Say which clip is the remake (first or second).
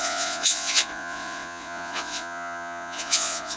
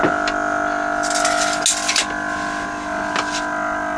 first